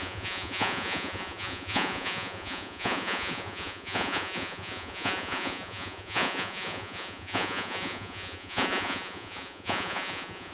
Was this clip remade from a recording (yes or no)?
yes